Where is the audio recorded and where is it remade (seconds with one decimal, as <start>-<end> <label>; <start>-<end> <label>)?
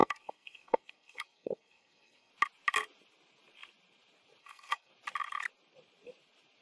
0.0-2.3 remade; 2.3-4.4 recorded; 4.4-4.9 remade; 4.9-6.6 recorded